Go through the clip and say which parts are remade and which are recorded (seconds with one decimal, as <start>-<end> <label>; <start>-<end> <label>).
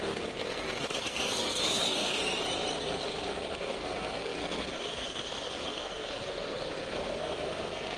0.0-2.2 remade; 2.2-2.8 recorded; 2.8-8.0 remade